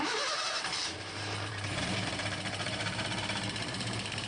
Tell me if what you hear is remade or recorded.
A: remade